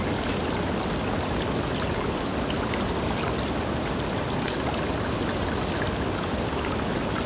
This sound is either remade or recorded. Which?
recorded